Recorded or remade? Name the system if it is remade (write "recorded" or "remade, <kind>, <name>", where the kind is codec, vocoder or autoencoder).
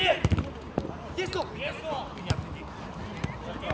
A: recorded